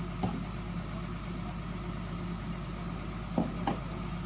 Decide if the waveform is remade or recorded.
recorded